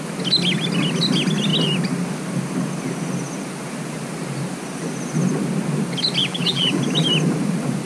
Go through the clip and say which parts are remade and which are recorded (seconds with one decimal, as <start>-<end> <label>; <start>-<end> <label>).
0.0-6.2 recorded; 6.2-6.8 remade; 6.8-7.9 recorded